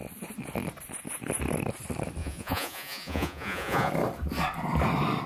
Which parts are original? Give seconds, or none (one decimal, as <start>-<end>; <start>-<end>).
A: 0.0-2.2; 3.9-5.3